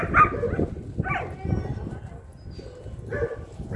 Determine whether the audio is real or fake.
real